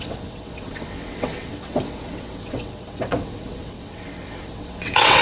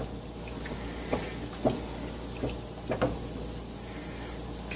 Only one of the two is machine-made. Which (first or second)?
first